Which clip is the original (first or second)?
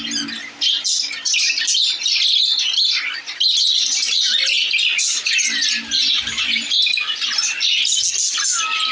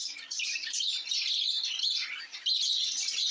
first